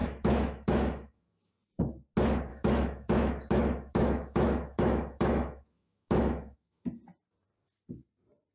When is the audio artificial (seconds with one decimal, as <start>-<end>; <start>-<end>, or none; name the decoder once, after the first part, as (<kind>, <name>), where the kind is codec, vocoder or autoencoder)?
0.0-1.5 (autoencoder, DAC-VAE); 2.5-6.8